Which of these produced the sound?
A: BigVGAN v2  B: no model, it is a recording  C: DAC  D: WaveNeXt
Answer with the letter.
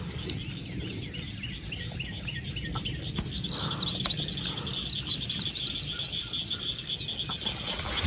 B